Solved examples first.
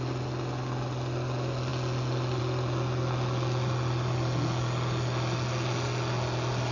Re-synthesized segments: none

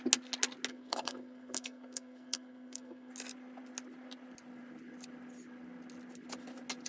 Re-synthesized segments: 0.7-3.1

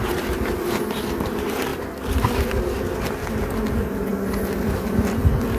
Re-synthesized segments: none

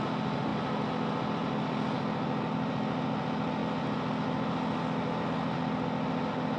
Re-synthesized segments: none